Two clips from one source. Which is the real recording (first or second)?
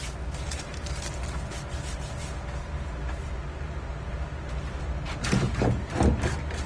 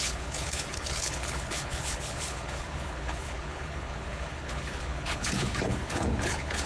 first